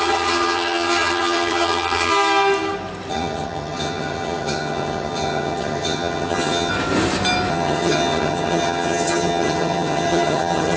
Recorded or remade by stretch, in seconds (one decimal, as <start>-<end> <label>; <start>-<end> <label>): 0.0-2.1 remade; 2.1-3.1 recorded; 3.1-6.7 remade; 6.7-7.5 recorded; 7.5-10.8 remade